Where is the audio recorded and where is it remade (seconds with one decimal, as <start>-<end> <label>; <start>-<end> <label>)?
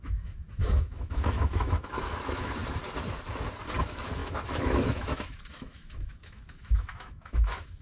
0.0-2.6 remade; 2.6-3.8 recorded; 3.8-7.8 remade